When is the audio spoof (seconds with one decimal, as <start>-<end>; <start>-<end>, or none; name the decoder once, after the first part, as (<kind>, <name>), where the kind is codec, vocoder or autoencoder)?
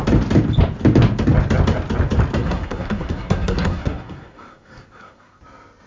2.4-5.4 (codec, SNAC)